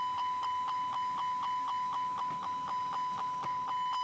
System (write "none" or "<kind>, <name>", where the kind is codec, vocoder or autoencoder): none